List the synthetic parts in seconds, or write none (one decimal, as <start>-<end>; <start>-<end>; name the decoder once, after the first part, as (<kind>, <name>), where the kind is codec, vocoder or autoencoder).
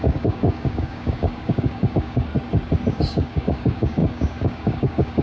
0.0-2.3 (codec, DAC); 2.9-5.2